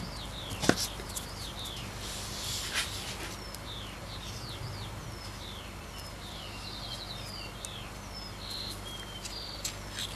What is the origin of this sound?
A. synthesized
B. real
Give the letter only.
B